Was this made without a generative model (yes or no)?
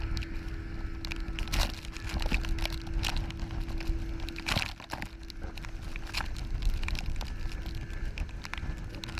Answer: yes